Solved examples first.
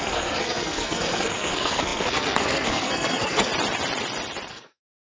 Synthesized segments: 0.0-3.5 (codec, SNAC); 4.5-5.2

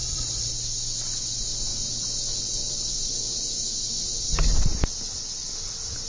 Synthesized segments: 0.0-0.5 (vocoder, Vocos)

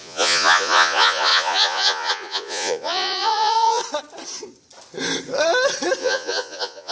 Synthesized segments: 0.0-3.8 (vocoder, Vocos); 6.0-6.9

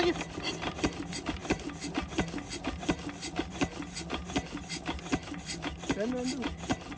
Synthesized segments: none

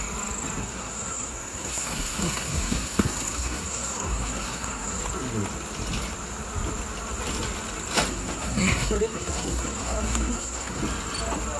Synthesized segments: 0.6-5.0 (codec, SNAC); 8.1-10.8

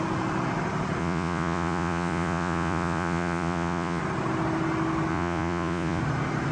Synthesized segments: 1.0-4.0 (vocoder, Vocos); 5.1-6.0

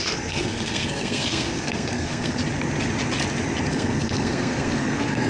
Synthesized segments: 0.0-2.4 (codec, SNAC); 3.7-5.3